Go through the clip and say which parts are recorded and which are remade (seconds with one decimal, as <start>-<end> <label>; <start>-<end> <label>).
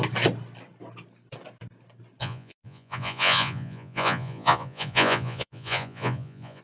0.0-2.2 recorded; 2.2-6.6 remade